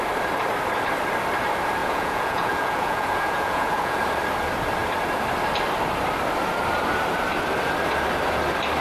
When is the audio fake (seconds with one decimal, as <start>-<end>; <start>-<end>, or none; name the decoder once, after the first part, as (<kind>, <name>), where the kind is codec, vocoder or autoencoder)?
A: 1.8-4.0 (vocoder, Vocos)